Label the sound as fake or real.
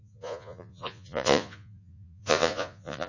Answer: fake